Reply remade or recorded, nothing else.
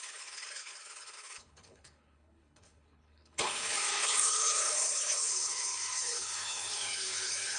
remade